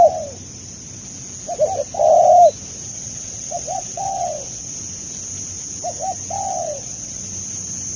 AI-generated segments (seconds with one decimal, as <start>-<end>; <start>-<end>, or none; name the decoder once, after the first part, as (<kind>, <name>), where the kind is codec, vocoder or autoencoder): 2.9-4.7 (vocoder, WaveNeXt); 6.6-7.2